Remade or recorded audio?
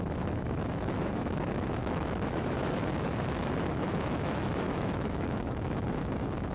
remade